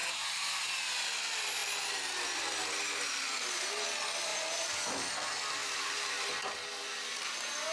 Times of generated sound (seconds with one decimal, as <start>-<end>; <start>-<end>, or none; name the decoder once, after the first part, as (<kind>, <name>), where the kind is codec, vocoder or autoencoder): 5.6-6.3 (vocoder, BigVGAN v2)